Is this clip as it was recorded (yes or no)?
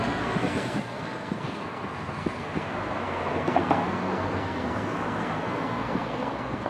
no